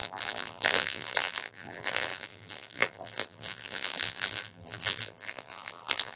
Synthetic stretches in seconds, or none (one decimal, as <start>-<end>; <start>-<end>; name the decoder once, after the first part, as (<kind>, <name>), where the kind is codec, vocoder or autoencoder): 0.0-6.2 (vocoder, BigVGAN v2)